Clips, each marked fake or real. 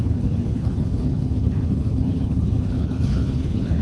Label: fake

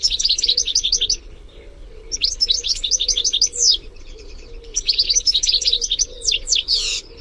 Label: fake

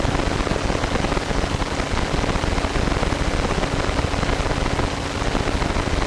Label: real